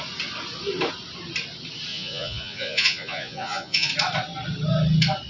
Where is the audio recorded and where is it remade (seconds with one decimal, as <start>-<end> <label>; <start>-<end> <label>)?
0.0-1.9 recorded; 1.9-3.9 remade; 3.9-5.3 recorded